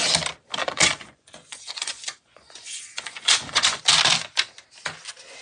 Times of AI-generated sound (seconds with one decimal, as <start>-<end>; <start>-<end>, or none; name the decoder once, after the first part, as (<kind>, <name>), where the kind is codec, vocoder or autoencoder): 0.6-3.8 (vocoder, Vocos)